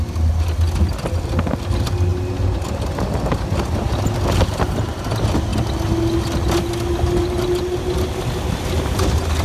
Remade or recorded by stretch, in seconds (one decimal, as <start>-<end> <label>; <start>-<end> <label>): 0.0-9.4 recorded